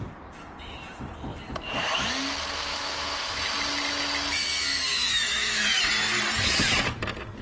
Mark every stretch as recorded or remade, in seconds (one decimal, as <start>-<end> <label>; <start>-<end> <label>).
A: 0.0-2.7 recorded; 2.7-3.4 remade; 3.4-4.7 recorded; 4.7-5.8 remade; 5.8-7.4 recorded